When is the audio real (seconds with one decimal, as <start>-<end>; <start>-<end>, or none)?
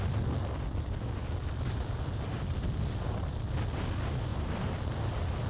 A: 0.0-4.3; 4.9-5.5